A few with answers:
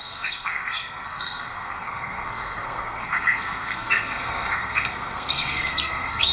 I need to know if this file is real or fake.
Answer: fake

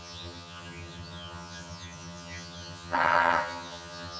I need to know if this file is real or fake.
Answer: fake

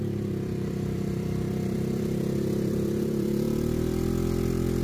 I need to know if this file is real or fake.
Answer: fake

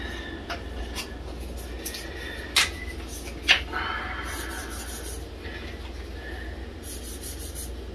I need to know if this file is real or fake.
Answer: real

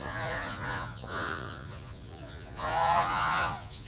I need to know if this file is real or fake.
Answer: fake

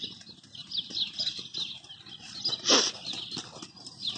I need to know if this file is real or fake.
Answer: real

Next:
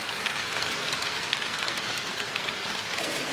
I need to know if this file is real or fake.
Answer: fake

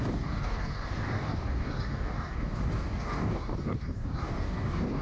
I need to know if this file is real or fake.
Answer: fake